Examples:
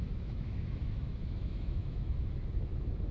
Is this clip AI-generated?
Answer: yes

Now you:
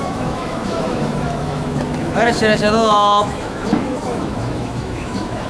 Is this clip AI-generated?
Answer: yes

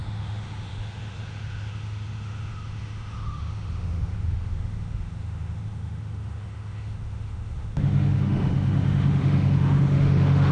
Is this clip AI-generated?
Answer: yes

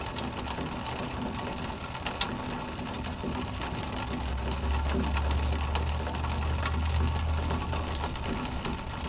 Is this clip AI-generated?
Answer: no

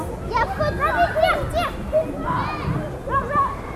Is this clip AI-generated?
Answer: no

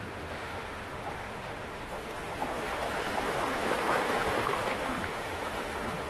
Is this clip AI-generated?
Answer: yes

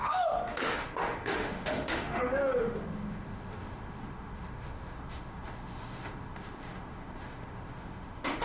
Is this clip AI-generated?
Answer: yes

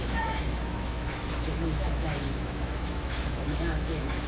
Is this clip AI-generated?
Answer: yes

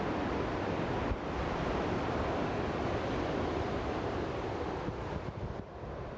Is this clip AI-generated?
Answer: no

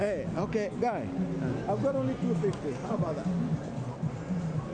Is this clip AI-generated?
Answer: no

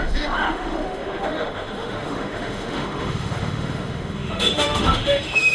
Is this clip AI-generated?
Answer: yes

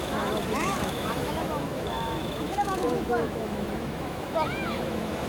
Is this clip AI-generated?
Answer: yes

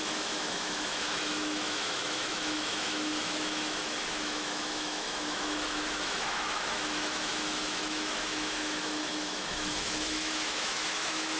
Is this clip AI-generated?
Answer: yes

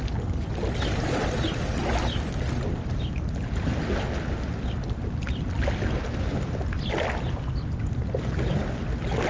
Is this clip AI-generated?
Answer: no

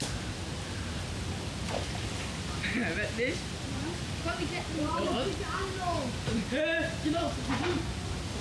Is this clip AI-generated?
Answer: no